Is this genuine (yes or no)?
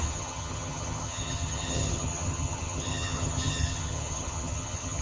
no